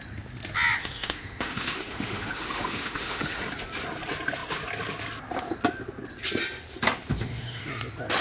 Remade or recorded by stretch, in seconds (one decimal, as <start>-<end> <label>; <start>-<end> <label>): 0.0-0.8 recorded; 0.8-3.4 remade; 3.4-7.1 recorded; 7.1-7.7 remade; 7.7-8.2 recorded

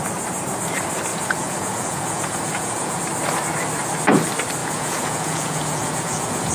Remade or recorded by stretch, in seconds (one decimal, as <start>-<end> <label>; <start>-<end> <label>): 0.0-1.1 recorded; 1.1-3.0 remade; 3.0-4.6 recorded; 4.6-6.5 remade